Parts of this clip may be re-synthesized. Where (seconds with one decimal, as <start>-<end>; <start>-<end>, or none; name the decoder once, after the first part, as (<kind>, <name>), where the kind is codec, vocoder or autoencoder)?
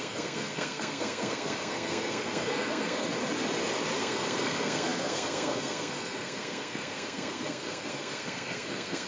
0.0-3.1 (codec, SNAC); 4.0-9.1